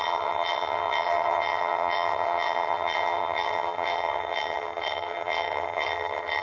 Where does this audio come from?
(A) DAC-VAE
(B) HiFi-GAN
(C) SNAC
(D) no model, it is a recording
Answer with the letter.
B